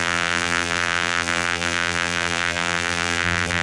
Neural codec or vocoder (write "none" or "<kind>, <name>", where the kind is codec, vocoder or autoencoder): vocoder, BigVGAN v2